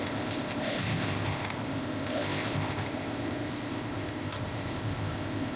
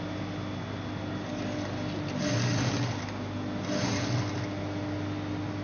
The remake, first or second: first